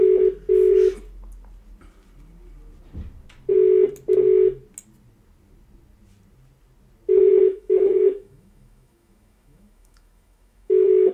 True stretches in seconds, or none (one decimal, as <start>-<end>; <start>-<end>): 0.0-7.5